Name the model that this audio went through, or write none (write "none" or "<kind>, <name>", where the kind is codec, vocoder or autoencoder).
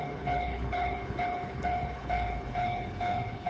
codec, HILCodec